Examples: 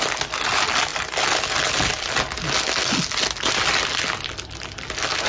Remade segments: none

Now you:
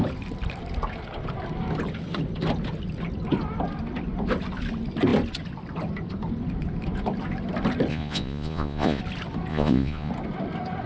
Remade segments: 7.9-9.0 (vocoder, Vocos); 9.5-10.1

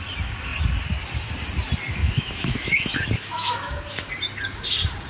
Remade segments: 2.0-4.1 (autoencoder, DAC-VAE)

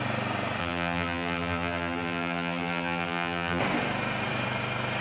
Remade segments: 0.6-3.6 (vocoder, BigVGAN v2)